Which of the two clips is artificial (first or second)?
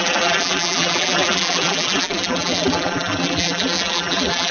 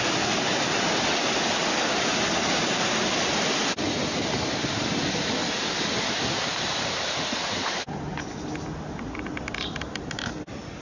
first